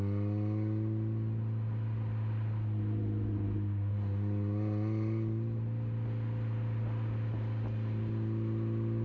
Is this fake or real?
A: real